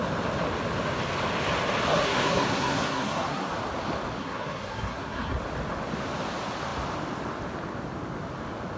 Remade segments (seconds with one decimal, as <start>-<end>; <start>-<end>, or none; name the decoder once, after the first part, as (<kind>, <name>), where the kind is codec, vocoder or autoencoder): 1.9-3.5 (codec, SNAC); 4.2-5.4